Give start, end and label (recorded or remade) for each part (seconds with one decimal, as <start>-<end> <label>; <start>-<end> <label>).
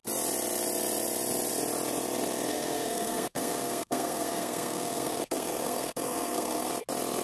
0.0-2.5 recorded; 2.5-6.7 remade; 6.7-7.2 recorded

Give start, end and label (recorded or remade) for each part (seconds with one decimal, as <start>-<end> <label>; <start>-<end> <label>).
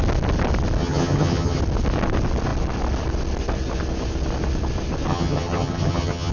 0.0-0.8 recorded; 0.8-1.6 remade; 1.6-5.1 recorded; 5.1-6.3 remade